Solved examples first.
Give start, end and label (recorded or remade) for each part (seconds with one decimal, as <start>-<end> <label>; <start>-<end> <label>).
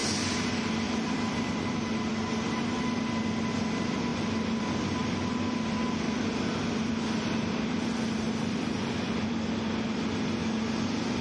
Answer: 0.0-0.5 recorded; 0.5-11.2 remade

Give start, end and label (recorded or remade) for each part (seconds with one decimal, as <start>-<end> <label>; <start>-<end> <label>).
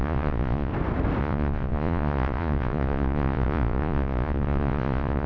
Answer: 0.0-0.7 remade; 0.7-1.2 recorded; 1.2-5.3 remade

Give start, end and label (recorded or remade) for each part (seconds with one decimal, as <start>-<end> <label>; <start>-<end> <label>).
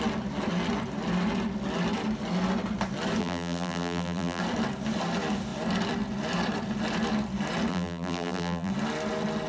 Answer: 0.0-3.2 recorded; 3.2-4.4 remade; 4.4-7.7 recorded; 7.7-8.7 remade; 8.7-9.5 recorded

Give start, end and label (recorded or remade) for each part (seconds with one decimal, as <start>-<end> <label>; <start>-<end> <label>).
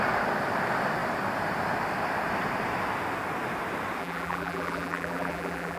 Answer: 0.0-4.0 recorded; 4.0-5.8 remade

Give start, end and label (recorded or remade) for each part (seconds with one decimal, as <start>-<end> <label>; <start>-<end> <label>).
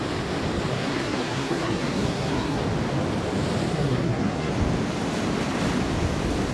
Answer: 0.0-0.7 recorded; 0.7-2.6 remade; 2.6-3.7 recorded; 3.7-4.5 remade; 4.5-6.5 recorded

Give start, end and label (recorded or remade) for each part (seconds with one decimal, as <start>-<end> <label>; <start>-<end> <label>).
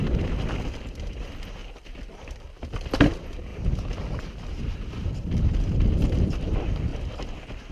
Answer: 0.0-1.6 remade; 1.6-2.1 recorded; 2.1-3.5 remade; 3.5-4.5 recorded; 4.5-6.9 remade; 6.9-7.7 recorded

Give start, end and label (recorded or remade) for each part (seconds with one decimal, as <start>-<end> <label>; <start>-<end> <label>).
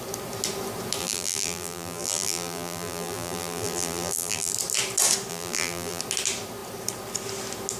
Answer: 0.0-1.0 recorded; 1.0-4.5 remade; 4.5-5.3 recorded; 5.3-6.0 remade; 6.0-7.8 recorded